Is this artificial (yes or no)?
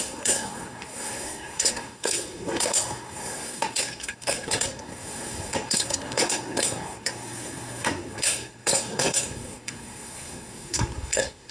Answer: yes